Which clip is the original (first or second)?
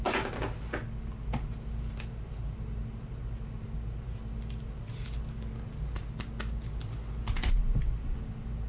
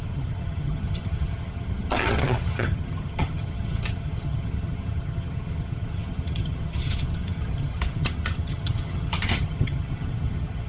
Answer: first